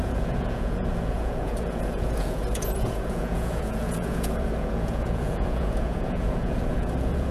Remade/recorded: remade